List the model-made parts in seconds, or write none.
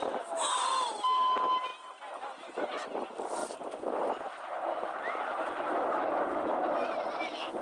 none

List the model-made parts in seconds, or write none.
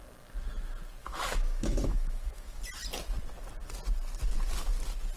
1.0-2.6 (autoencoder, DAC-VAE)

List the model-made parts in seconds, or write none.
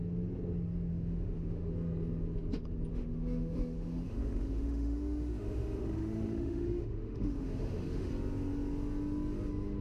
0.9-1.7 (autoencoder, DAC-VAE); 2.9-8.1